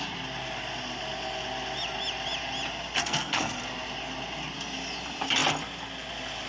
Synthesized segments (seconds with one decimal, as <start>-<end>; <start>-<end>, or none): 3.0-3.6

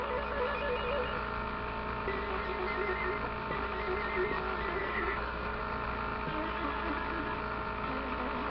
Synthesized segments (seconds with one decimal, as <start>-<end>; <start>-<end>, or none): 4.8-5.6

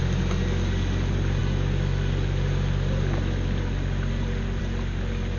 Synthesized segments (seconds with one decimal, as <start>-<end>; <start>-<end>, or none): none

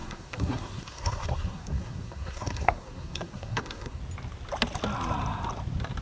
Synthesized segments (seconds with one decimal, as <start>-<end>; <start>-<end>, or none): 0.0-4.0